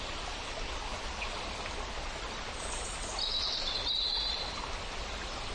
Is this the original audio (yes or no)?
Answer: yes